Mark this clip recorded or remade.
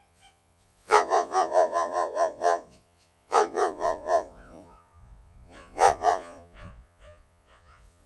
remade